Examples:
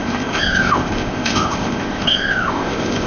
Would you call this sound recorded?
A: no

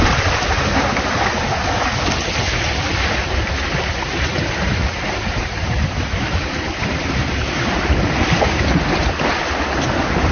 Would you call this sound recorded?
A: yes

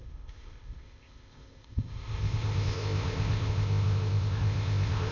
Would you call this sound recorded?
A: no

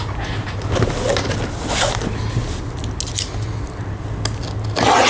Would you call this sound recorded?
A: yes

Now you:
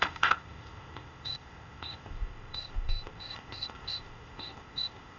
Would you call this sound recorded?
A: no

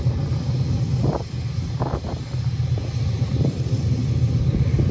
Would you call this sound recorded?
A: yes